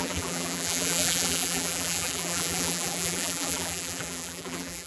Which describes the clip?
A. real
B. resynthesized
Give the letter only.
B